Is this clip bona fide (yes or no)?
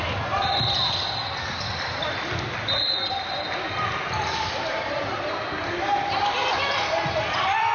no